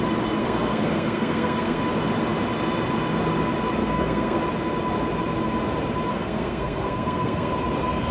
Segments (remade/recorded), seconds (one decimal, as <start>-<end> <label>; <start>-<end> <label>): 0.0-0.4 recorded; 0.4-1.8 remade; 1.8-3.8 recorded; 3.8-4.4 remade; 4.4-6.1 recorded; 6.1-7.5 remade; 7.5-8.1 recorded